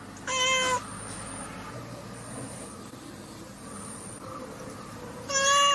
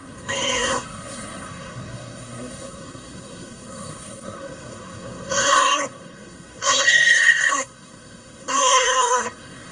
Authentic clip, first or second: first